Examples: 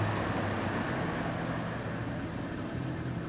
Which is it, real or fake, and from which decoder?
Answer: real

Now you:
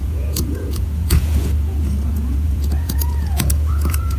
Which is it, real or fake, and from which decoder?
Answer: fake, vocoder, Vocos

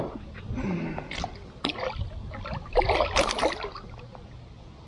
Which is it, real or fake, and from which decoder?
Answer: real